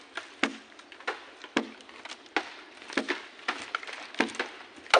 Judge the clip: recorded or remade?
recorded